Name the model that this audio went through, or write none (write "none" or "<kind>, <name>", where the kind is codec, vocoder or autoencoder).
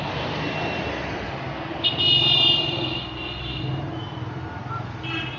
none